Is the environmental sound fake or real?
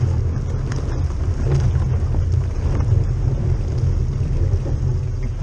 real